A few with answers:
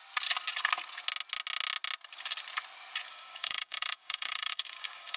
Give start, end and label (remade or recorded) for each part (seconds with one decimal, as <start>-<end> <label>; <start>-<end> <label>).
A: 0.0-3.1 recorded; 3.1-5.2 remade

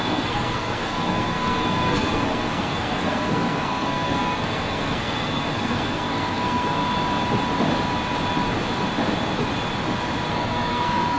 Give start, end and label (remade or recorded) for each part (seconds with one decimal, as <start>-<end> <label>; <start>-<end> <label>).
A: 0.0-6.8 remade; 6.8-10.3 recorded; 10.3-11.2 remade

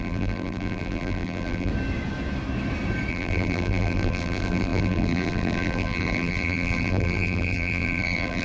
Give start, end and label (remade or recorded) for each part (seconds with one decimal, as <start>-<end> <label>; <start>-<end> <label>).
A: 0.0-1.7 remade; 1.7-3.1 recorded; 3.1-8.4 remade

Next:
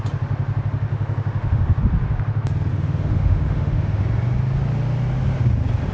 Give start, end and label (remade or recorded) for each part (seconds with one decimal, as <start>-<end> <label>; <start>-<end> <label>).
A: 0.0-0.9 recorded; 0.9-1.8 remade; 1.8-2.7 recorded; 2.7-4.0 remade; 4.0-5.9 recorded

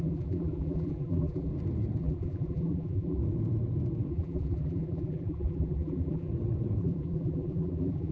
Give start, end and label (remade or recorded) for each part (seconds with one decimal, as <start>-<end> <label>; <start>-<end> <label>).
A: 0.0-1.5 remade; 1.5-2.0 recorded; 2.0-3.2 remade; 3.2-4.1 recorded; 4.1-6.3 remade; 6.3-6.8 recorded; 6.8-8.1 remade

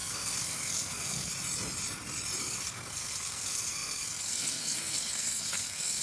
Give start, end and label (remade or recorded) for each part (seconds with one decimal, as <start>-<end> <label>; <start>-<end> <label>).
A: 0.0-1.3 remade; 1.3-2.4 recorded; 2.4-6.0 remade

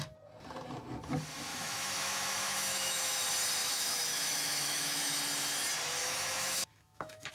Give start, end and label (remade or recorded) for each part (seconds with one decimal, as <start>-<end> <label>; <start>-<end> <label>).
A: 0.0-1.5 recorded; 1.5-3.2 remade; 3.2-3.6 recorded; 3.6-5.2 remade; 5.2-6.0 recorded; 6.0-7.3 remade